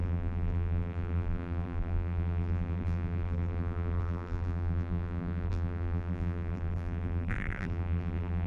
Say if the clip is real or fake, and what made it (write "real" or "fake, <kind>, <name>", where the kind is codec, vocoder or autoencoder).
fake, vocoder, BigVGAN v2